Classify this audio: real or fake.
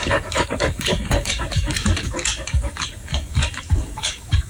fake